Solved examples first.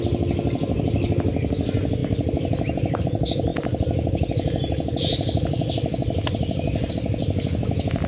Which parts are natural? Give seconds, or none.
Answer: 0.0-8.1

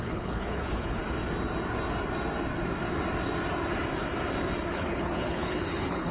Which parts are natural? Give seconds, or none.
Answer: 1.0-4.7

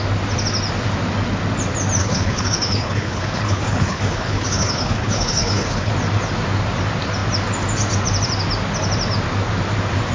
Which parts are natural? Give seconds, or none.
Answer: 0.0-2.0; 5.9-10.1